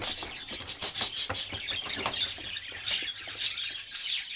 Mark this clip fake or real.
real